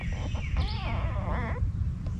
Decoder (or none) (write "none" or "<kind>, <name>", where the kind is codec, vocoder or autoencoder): none